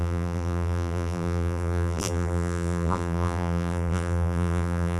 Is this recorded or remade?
remade